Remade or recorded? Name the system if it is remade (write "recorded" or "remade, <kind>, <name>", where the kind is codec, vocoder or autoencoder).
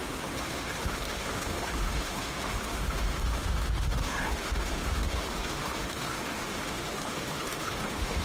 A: remade, autoencoder, DAC-VAE